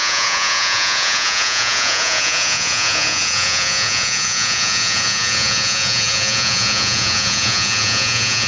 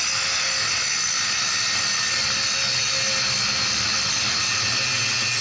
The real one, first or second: second